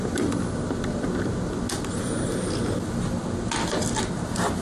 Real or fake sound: real